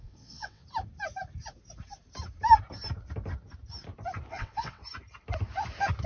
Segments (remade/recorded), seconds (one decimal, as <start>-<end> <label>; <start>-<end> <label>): 0.0-0.6 remade; 0.6-4.3 recorded; 4.3-4.8 remade; 4.8-6.1 recorded